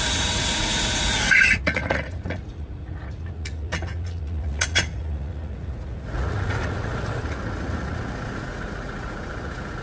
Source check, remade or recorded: remade